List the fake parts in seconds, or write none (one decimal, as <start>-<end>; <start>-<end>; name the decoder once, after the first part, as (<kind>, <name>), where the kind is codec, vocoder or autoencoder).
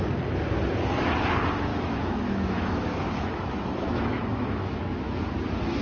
1.7-5.2 (autoencoder, DAC-VAE)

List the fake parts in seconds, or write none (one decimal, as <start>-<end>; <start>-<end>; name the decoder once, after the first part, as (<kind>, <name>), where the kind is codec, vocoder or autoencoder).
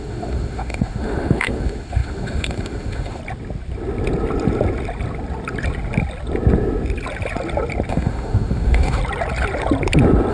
0.0-3.2 (autoencoder, DAC-VAE); 7.9-9.0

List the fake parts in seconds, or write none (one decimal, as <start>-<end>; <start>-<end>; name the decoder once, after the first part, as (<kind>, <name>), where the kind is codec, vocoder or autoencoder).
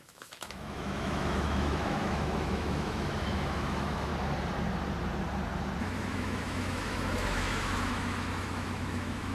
0.0-4.1 (autoencoder, DAC-VAE); 5.8-9.3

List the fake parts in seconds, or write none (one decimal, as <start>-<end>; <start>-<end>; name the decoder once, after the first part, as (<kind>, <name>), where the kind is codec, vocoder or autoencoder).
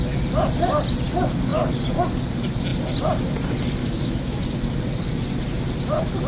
3.8-4.4 (autoencoder, DAC-VAE)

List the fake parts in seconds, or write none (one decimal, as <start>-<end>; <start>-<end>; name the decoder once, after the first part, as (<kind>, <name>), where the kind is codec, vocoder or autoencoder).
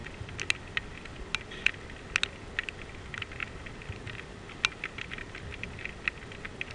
none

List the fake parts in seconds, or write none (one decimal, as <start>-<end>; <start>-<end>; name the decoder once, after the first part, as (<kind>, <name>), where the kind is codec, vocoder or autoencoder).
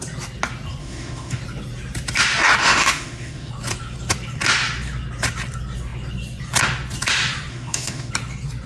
0.8-1.4 (autoencoder, DAC-VAE); 2.6-3.5; 7.5-8.1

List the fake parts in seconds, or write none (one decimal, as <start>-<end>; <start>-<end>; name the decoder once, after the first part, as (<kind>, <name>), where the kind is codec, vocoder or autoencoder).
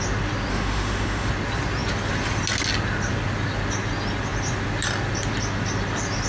0.5-1.3 (autoencoder, DAC-VAE)